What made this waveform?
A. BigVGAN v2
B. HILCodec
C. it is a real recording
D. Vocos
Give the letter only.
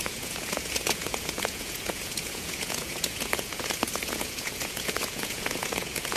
D